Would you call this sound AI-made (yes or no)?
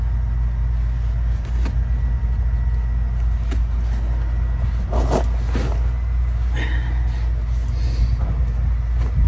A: no